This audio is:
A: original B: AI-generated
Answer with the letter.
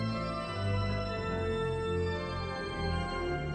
A